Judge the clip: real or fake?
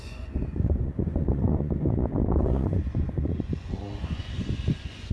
fake